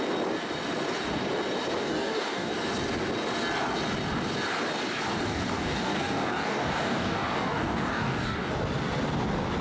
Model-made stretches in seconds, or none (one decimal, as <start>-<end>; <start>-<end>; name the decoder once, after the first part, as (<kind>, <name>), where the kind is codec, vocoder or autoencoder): 1.8-2.5 (codec, DAC); 5.3-8.5